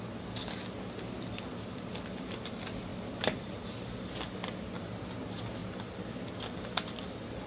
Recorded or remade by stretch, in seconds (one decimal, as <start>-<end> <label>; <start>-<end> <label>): 0.0-7.5 recorded